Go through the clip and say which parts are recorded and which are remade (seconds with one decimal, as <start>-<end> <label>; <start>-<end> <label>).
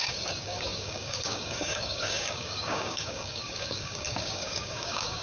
0.0-5.2 remade